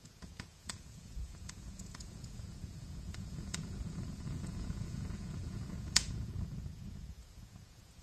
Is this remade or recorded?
remade